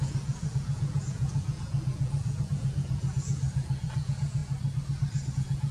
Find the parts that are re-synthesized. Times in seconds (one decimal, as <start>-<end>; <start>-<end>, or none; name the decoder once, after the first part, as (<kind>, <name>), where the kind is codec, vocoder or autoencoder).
0.0-4.4 (vocoder, Vocos); 5.3-5.7